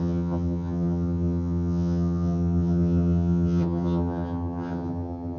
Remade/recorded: remade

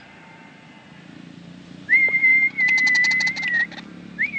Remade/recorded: remade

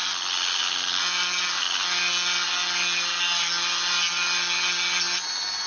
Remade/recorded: recorded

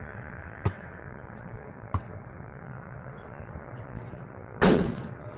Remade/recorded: remade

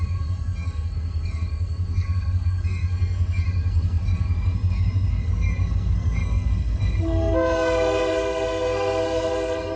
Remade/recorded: remade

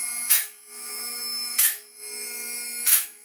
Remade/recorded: remade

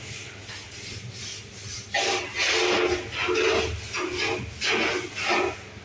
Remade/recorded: recorded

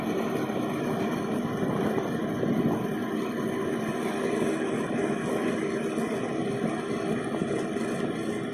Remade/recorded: recorded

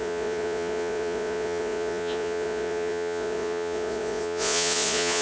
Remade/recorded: remade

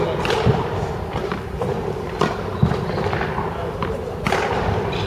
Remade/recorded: recorded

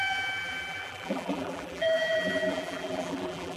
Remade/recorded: remade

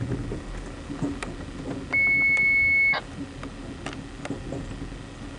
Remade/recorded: recorded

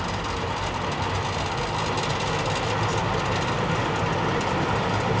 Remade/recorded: recorded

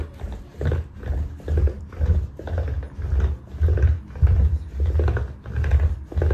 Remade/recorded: recorded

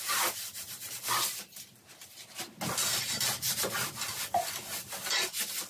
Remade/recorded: recorded